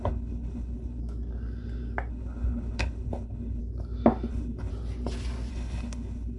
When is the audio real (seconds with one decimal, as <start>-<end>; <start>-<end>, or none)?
1.0-2.1; 3.6-4.3; 4.7-5.5